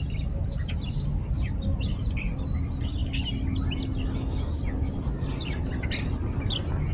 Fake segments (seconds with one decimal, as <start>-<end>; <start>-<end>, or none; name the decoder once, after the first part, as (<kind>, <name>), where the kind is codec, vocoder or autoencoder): none